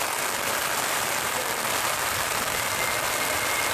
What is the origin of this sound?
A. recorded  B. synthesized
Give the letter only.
B